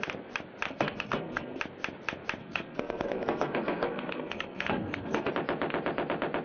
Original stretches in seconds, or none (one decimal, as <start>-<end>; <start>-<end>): 0.0-0.7; 1.6-2.4; 5.3-6.4